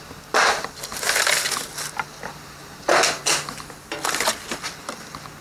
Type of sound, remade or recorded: recorded